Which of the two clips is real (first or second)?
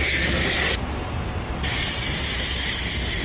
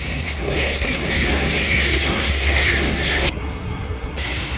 first